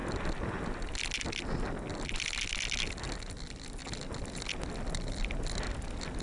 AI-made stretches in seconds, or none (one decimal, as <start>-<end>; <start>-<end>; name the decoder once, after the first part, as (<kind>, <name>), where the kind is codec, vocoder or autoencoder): none